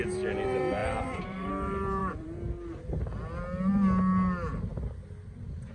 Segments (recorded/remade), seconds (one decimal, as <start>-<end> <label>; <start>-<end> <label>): 0.0-0.8 recorded; 0.8-1.5 remade; 1.5-2.0 recorded; 2.0-3.0 remade; 3.0-5.7 recorded